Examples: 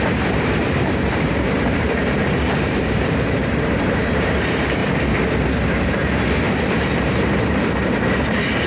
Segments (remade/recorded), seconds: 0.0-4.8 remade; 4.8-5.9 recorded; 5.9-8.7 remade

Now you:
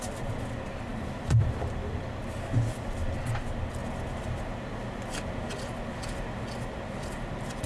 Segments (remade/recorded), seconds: 0.0-0.9 recorded; 0.9-2.2 remade; 2.2-7.7 recorded